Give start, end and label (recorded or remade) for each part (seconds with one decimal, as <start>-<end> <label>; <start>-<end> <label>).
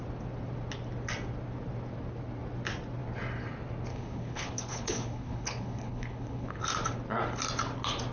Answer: 0.0-3.9 recorded; 3.9-6.6 remade; 6.6-8.1 recorded